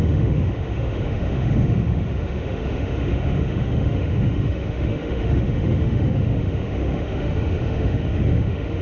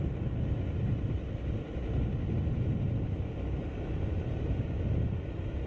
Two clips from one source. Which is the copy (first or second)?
first